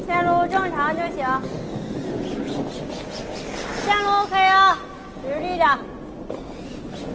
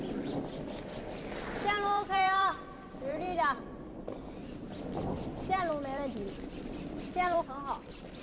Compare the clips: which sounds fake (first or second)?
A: second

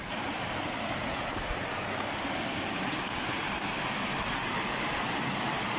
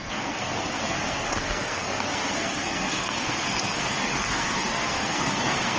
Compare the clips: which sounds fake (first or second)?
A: second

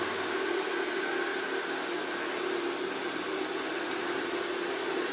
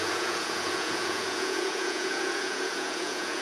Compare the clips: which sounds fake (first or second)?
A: second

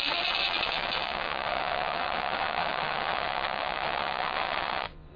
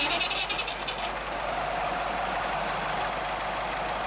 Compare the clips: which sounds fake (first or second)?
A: first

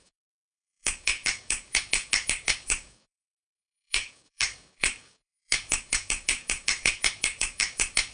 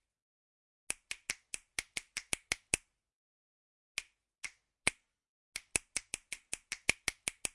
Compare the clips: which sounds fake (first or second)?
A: first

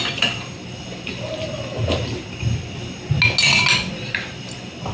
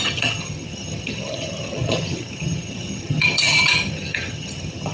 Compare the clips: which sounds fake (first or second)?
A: second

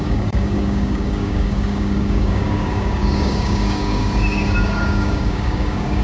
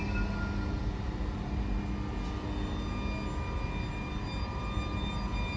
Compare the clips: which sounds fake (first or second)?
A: first